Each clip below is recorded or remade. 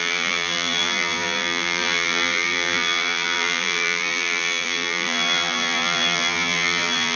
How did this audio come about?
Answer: remade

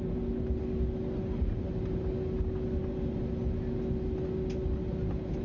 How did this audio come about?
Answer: recorded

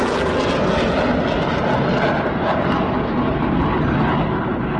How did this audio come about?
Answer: recorded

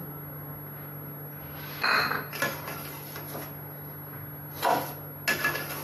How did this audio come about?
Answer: recorded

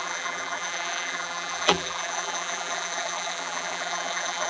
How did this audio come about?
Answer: remade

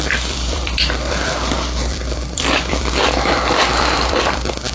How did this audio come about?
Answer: remade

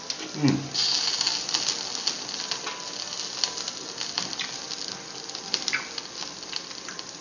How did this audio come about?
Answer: recorded